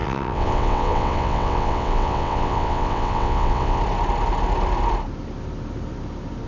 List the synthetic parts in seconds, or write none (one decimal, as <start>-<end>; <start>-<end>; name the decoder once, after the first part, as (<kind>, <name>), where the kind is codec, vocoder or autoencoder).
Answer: 0.0-3.8 (vocoder, WaveNeXt)